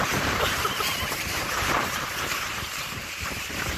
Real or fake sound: fake